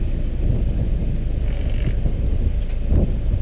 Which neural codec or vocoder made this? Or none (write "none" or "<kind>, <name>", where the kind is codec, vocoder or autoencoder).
none